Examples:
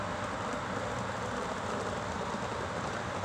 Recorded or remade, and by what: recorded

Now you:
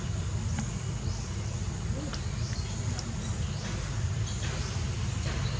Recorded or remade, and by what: recorded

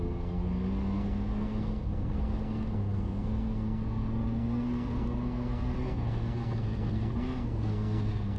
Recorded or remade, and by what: remade, codec, SNAC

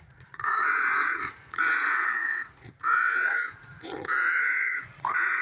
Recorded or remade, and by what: remade, vocoder, Vocos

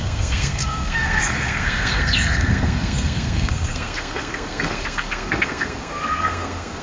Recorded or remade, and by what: remade, codec, SNAC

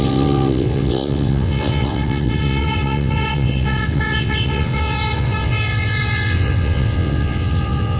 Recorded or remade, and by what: remade, vocoder, WaveNeXt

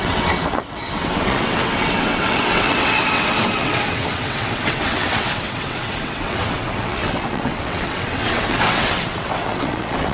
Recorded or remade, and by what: remade, vocoder, WaveNeXt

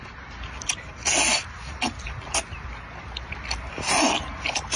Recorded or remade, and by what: recorded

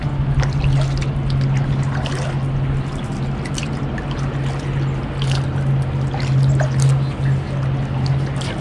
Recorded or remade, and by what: recorded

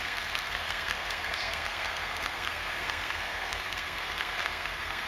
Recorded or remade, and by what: remade, codec, SNAC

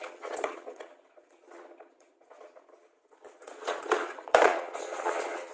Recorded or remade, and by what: remade, vocoder, Vocos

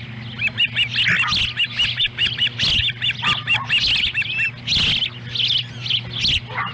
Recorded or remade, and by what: recorded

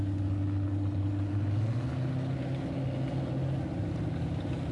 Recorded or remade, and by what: recorded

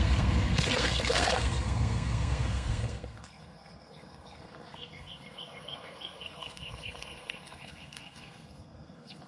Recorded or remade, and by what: remade, codec, SNAC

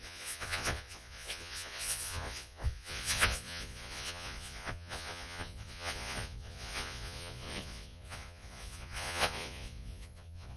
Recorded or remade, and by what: remade, vocoder, Vocos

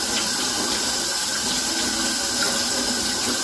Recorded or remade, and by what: recorded